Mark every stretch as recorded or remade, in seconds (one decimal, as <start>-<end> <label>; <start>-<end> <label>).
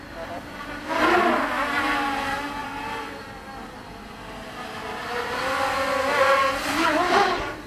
0.0-2.6 recorded; 2.6-3.2 remade; 3.2-7.7 recorded